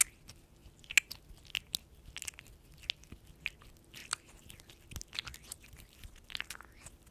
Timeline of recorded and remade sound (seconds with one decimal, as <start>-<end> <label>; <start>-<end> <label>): 0.0-7.1 recorded